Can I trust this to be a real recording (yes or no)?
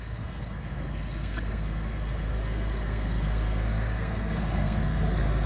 no